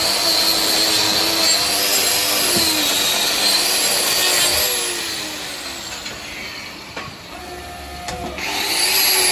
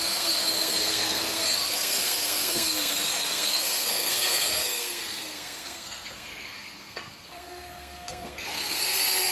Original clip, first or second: first